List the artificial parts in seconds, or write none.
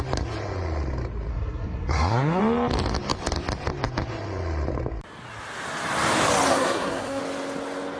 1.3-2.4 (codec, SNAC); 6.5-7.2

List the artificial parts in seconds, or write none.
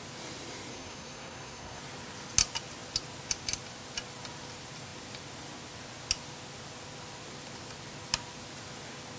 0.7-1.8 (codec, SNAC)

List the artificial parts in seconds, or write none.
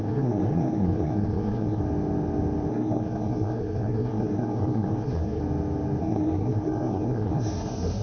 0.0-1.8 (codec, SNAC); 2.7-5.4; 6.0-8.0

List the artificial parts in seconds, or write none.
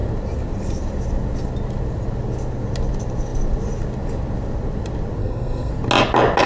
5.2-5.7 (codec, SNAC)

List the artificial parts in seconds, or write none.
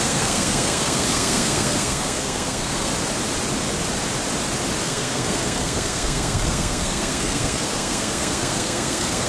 0.0-2.9 (codec, SNAC); 4.8-9.3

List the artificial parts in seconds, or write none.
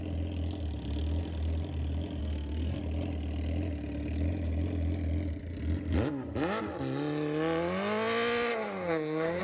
2.2-2.8 (codec, SNAC); 8.5-9.4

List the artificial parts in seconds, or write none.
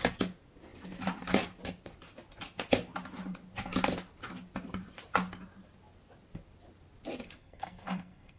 7.4-8.4 (codec, SNAC)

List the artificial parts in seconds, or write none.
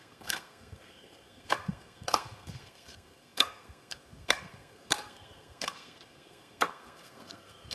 0.0-7.7 (codec, SNAC)